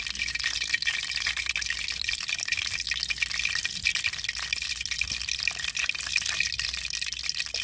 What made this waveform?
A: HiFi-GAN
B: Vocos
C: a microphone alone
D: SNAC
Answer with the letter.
C